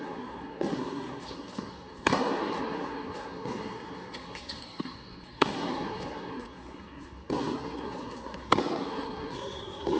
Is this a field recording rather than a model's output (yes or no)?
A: no